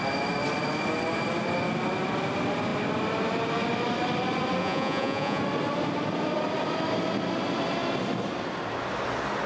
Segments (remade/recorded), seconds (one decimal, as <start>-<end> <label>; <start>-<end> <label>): 0.0-4.6 recorded; 4.6-5.4 remade; 5.4-9.5 recorded